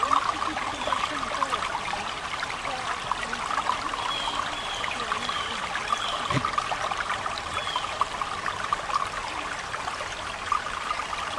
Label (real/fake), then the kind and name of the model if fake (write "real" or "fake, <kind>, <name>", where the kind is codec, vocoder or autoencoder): real